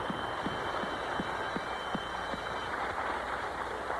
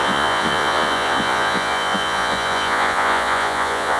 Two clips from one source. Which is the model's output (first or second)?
second